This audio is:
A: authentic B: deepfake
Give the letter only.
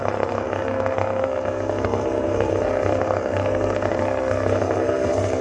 B